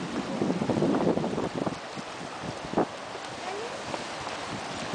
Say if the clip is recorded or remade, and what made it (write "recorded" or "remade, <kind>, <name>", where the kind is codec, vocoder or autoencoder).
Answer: recorded